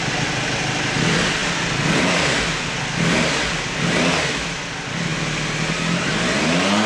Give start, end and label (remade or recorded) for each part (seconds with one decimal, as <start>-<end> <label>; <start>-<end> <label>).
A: 0.0-6.9 recorded